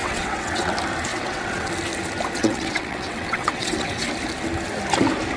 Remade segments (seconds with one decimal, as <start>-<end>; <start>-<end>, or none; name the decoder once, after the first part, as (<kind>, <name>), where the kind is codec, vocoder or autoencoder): 0.0-0.7 (vocoder, WaveNeXt); 1.1-1.7; 2.4-4.1